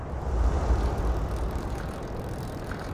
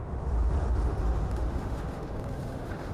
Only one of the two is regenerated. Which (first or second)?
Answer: second